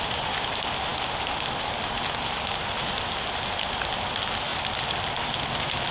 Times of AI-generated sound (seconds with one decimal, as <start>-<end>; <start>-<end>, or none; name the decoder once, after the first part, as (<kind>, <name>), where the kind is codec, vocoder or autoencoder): none